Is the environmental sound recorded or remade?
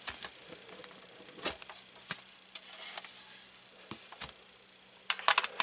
recorded